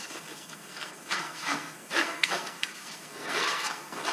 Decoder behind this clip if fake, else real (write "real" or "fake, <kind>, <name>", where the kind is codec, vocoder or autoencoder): fake, codec, SNAC